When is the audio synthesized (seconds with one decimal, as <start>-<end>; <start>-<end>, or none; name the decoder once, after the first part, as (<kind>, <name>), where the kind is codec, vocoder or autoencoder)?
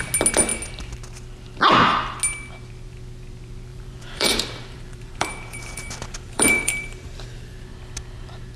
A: 3.7-7.6 (vocoder, BigVGAN v2)